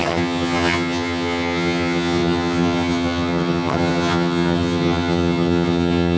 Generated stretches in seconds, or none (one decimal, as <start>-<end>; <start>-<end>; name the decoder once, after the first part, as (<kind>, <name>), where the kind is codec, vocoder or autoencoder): 0.0-6.2 (vocoder, HiFi-GAN)